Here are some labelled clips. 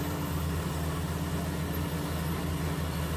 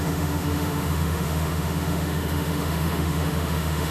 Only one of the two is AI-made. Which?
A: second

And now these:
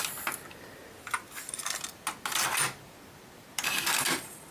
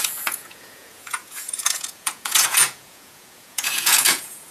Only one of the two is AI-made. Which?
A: second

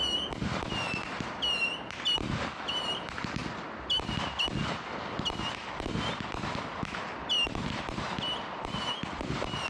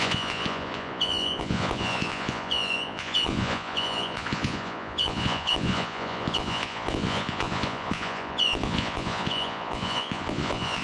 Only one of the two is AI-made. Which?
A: second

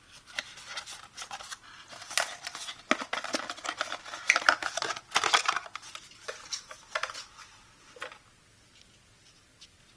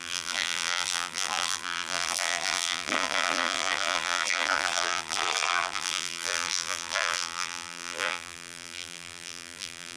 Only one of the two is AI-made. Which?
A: second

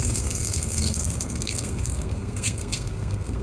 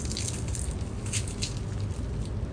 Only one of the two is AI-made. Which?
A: first